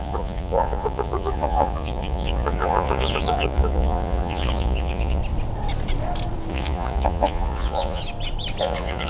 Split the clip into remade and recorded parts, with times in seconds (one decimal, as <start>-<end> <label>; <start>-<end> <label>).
0.0-5.2 remade; 5.2-6.5 recorded; 6.5-8.0 remade; 8.0-8.6 recorded; 8.6-9.1 remade